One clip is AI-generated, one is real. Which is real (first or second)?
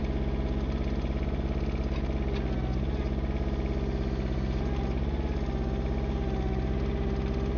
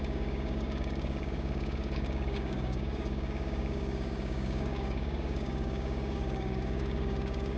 first